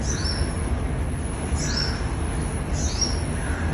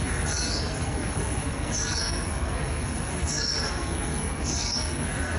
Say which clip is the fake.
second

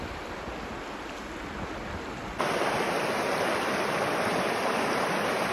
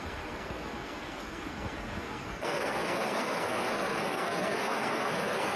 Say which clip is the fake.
second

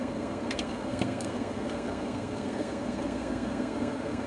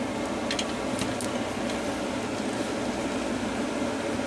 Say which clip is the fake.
first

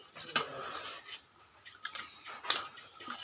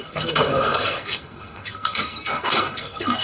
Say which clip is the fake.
second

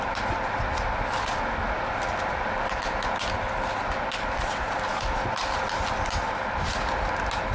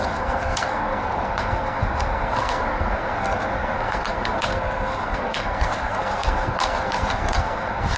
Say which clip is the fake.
second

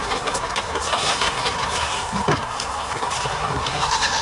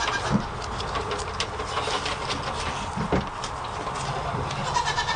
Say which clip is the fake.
first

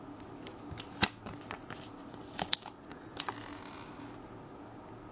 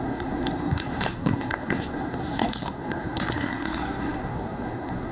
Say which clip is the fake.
second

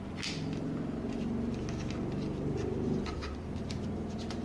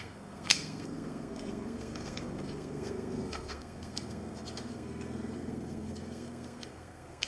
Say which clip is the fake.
second